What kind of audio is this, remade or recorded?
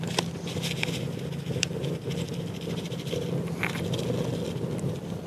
recorded